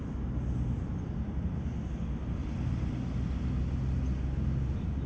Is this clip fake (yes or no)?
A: no